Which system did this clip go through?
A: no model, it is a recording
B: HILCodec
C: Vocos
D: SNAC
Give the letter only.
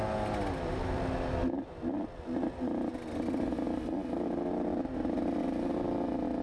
A